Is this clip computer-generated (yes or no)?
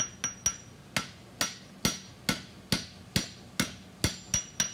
no